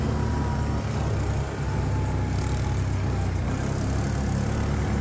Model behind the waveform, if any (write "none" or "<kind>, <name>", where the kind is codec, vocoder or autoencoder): none